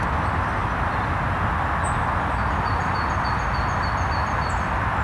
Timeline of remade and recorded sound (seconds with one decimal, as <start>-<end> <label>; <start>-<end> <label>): 0.0-5.0 recorded